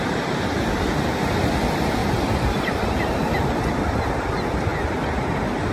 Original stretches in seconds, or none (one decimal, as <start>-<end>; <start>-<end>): 0.0-2.0; 3.7-5.7